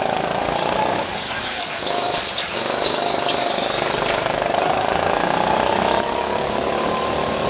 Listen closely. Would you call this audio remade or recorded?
remade